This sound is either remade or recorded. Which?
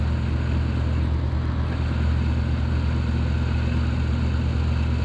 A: recorded